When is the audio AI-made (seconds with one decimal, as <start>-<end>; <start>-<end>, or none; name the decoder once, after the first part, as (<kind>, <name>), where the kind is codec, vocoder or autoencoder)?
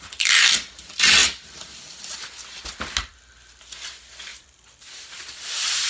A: 4.3-5.9 (vocoder, BigVGAN v2)